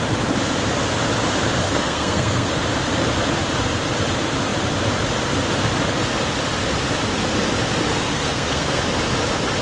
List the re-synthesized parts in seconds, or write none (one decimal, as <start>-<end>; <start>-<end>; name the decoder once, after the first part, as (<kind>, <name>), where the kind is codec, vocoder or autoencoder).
1.6-2.5 (codec, SNAC); 7.9-8.8